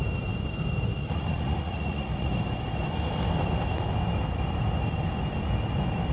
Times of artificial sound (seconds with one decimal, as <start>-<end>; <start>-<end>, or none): 0.9-2.3